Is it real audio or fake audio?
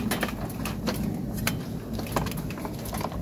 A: real